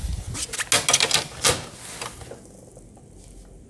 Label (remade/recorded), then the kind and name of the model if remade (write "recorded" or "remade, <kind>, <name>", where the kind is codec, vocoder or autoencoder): recorded